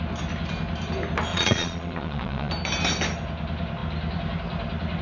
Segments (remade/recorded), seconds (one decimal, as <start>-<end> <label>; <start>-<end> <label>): 0.0-1.3 recorded; 1.3-2.5 remade; 2.5-5.0 recorded